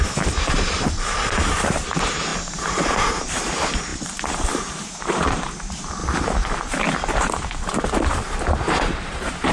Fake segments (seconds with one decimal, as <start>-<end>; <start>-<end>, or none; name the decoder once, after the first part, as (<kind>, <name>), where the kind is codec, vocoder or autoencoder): 0.0-6.0 (vocoder, BigVGAN v2); 7.2-9.5